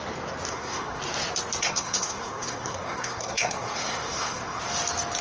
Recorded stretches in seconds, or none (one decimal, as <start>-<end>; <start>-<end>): 0.0-0.5; 1.0-1.6; 4.6-5.2